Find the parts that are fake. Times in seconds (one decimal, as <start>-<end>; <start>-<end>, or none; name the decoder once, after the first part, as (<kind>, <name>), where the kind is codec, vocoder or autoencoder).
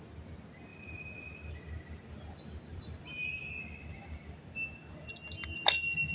2.7-5.1 (vocoder, BigVGAN v2)